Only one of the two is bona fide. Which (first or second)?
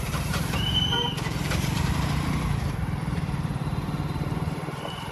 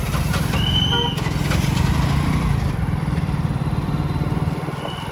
second